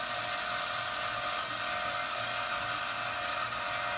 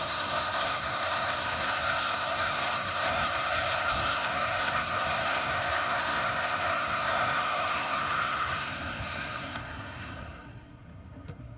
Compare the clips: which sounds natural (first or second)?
first